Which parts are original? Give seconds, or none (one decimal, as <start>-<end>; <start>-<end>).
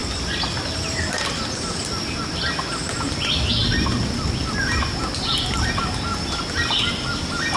0.0-7.6